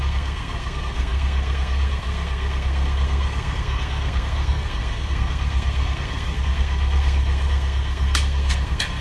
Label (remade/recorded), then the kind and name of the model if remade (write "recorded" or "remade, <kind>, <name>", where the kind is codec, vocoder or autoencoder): remade, codec, SNAC